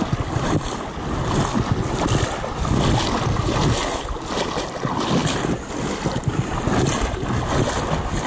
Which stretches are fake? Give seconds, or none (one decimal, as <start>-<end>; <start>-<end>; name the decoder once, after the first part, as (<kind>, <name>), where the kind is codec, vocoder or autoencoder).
none

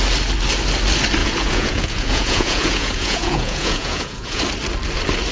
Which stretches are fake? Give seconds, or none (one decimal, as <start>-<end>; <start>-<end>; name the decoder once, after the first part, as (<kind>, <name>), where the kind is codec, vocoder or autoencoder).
1.2-4.4 (vocoder, Vocos)

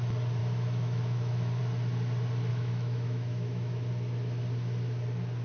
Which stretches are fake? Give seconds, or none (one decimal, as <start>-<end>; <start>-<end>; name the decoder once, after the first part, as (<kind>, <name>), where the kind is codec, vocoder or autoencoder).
0.4-1.6 (autoencoder, DAC-VAE); 2.5-3.9